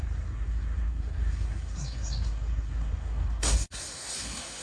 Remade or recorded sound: remade